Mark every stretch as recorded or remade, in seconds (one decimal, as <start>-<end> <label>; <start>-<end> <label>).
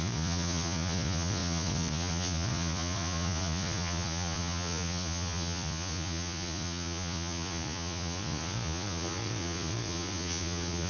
0.0-10.9 remade